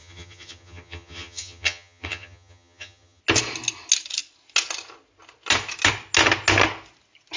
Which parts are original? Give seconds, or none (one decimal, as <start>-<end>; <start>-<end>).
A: 3.2-7.4